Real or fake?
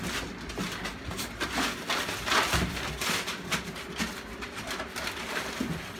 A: real